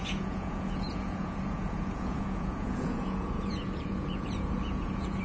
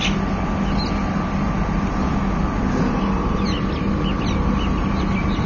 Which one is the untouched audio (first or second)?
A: second